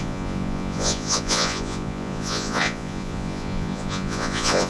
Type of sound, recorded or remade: remade